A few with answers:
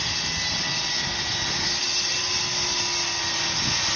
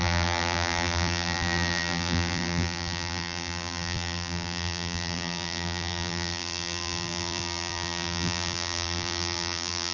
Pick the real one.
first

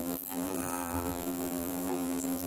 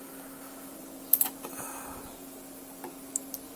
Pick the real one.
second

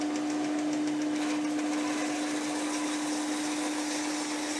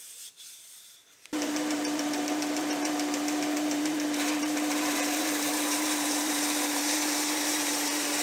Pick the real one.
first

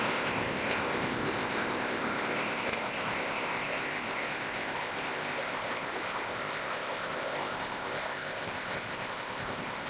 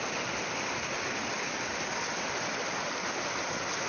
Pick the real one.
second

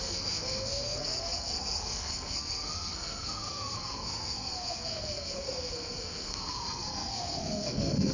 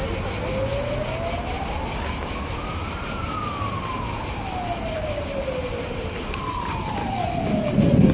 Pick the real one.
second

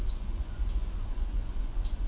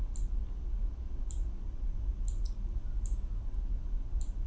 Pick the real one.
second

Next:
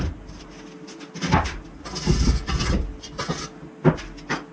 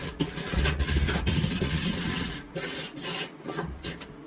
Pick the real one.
first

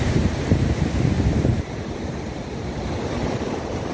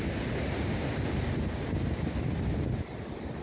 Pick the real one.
second